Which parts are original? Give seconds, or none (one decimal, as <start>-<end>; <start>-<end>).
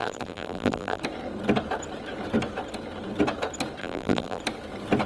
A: 1.0-3.8; 4.4-5.1